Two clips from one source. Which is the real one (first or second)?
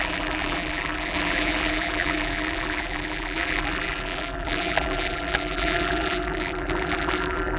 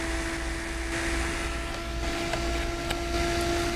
second